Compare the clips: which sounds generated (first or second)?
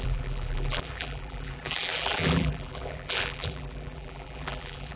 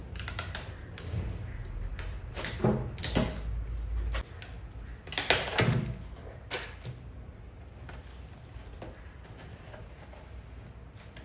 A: first